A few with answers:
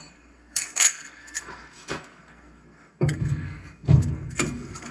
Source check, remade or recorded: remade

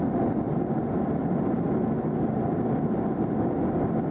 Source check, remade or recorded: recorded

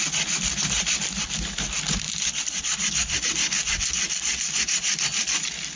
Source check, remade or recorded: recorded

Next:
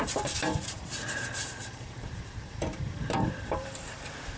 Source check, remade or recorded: remade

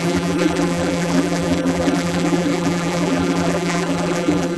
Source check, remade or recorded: remade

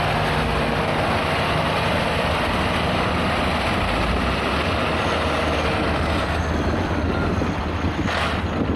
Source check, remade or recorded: recorded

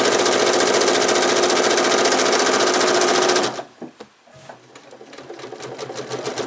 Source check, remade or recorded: recorded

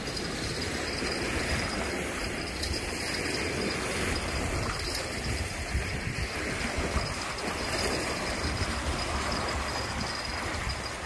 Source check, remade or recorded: recorded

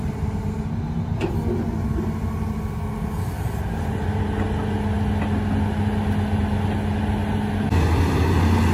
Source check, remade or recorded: recorded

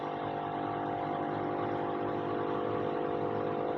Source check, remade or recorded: recorded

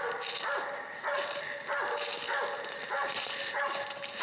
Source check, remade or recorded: recorded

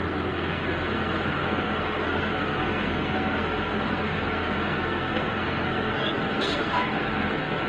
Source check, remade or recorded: remade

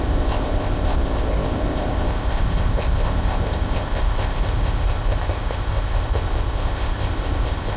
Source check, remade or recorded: remade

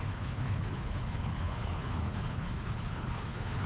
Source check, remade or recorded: remade